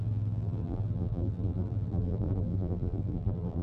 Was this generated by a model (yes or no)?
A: yes